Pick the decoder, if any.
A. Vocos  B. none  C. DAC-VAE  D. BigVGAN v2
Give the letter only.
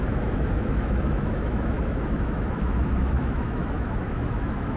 C